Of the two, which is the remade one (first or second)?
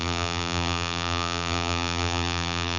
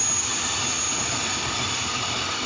first